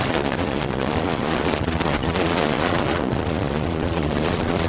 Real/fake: fake